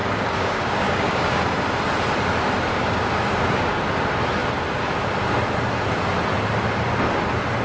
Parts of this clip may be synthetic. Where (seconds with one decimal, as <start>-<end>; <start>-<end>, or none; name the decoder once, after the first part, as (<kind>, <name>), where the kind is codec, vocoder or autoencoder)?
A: 0.0-1.4 (codec, DAC); 2.7-3.8